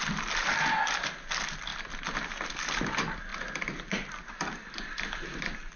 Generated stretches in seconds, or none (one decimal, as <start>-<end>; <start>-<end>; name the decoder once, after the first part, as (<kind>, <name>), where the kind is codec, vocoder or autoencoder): none